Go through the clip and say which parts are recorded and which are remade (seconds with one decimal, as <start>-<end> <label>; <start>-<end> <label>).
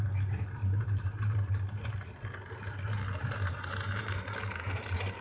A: 0.0-0.6 recorded; 0.6-1.6 remade; 1.6-3.2 recorded; 3.2-4.0 remade; 4.0-5.2 recorded